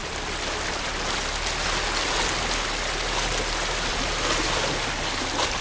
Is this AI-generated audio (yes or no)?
no